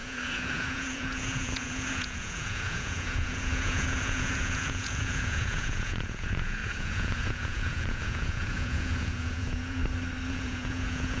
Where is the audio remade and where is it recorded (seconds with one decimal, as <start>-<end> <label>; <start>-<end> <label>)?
0.0-9.8 remade; 9.8-10.3 recorded; 10.3-11.2 remade